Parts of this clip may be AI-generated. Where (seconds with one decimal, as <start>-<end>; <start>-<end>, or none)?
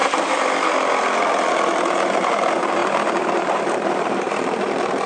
1.5-5.1